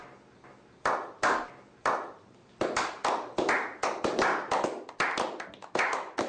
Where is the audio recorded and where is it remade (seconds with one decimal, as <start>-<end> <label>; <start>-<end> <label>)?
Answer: 0.0-5.6 recorded; 5.6-6.3 remade